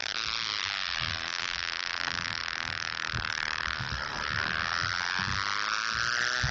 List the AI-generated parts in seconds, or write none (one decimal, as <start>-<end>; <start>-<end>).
0.0-6.5